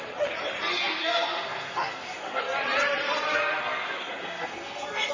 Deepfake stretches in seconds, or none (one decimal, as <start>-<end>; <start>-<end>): 0.8-2.4; 3.3-5.1